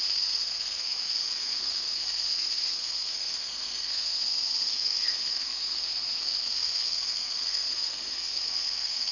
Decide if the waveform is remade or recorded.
remade